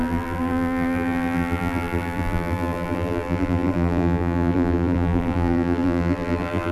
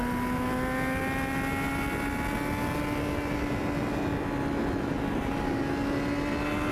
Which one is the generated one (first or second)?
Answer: first